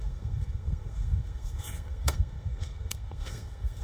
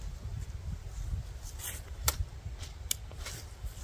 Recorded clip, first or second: second